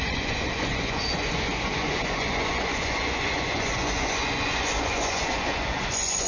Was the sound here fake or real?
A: fake